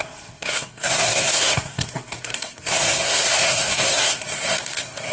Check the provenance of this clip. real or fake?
fake